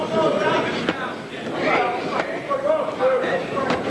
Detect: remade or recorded recorded